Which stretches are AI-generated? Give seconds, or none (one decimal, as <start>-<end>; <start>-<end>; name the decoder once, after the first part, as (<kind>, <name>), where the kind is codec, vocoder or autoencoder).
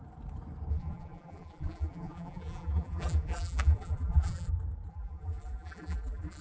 0.7-4.5 (vocoder, BigVGAN v2); 4.9-6.4